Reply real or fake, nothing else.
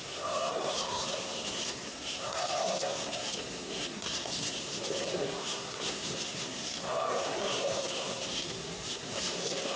fake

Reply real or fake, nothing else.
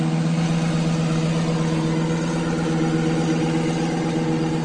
real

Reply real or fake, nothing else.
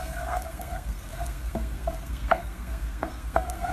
fake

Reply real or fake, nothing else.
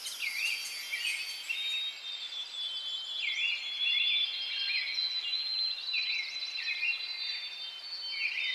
real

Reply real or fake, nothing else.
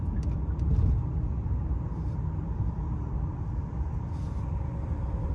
real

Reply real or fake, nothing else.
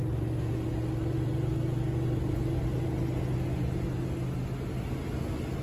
real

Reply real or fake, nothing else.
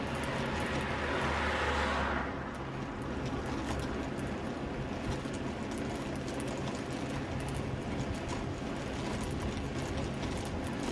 real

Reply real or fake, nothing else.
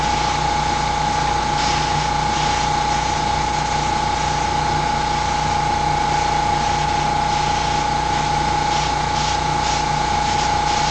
real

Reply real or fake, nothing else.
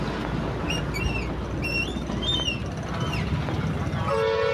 real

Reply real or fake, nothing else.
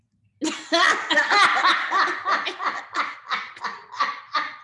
real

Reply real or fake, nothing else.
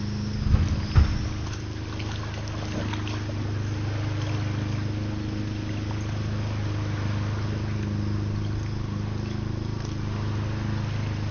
real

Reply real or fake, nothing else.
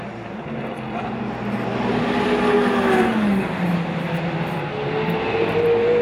real